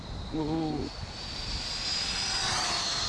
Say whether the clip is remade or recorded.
recorded